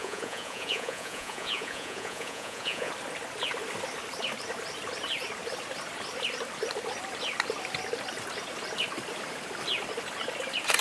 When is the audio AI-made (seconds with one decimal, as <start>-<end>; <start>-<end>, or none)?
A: 0.0-2.9